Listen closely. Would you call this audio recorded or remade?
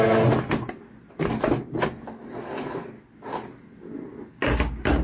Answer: recorded